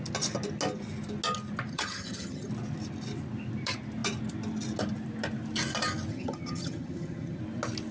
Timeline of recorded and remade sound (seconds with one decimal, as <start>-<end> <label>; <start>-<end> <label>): 0.0-1.7 recorded; 1.7-2.5 remade; 2.5-6.1 recorded; 6.1-7.4 remade; 7.4-7.9 recorded